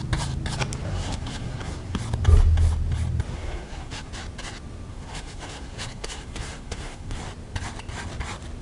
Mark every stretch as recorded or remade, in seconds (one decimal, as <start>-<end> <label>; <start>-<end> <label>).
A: 0.0-0.9 recorded; 0.9-2.0 remade; 2.0-3.3 recorded; 3.3-4.1 remade; 4.1-4.9 recorded; 4.9-7.2 remade; 7.2-8.6 recorded